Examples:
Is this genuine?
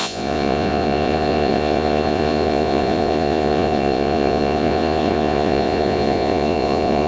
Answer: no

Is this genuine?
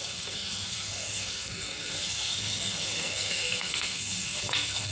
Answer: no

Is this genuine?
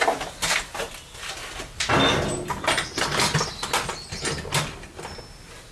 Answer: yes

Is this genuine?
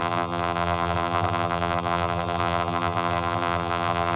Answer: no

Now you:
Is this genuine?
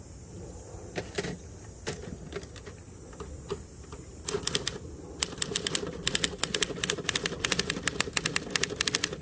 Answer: yes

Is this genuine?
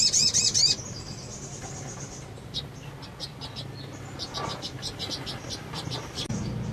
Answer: yes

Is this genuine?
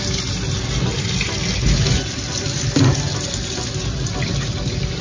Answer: yes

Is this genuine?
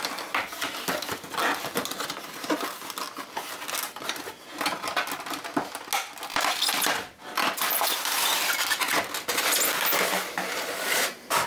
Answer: yes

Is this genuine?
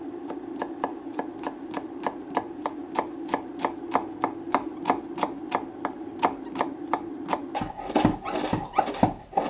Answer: yes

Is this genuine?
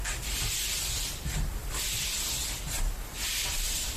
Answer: yes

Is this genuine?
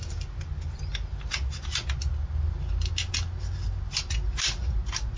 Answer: yes